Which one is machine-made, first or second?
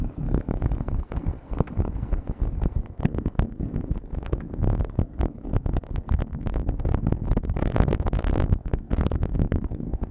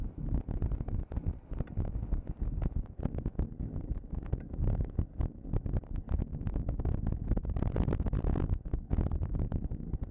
first